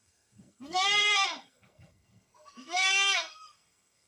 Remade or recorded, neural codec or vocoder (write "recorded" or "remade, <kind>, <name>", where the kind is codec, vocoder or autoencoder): remade, codec, SNAC